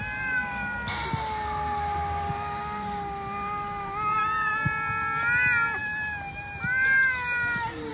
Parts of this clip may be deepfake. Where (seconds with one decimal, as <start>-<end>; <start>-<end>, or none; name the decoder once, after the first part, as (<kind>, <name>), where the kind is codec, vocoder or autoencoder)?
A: none